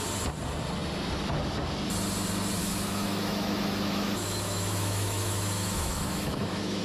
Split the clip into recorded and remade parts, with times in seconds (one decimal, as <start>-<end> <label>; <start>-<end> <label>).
0.0-2.6 recorded; 2.6-6.8 remade